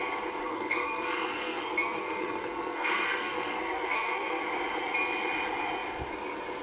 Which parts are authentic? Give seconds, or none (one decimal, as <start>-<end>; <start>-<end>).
0.0-0.4; 4.4-6.6